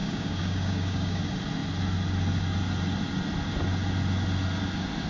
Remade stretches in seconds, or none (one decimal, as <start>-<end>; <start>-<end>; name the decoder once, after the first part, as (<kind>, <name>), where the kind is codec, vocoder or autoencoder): 0.0-1.2 (codec, DAC)